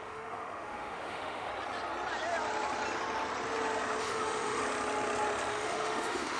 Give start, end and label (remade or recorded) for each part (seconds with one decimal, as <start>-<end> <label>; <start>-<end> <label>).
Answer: 0.0-1.5 remade; 1.5-4.0 recorded; 4.0-4.6 remade; 4.6-5.5 recorded; 5.5-6.4 remade